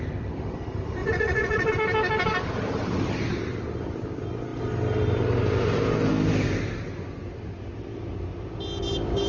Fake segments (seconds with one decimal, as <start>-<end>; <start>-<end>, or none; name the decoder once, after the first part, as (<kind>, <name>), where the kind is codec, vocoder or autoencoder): 1.0-1.7 (vocoder, Vocos)